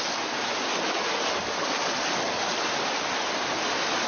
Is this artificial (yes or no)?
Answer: no